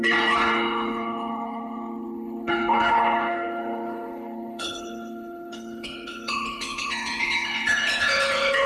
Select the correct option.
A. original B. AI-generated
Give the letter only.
B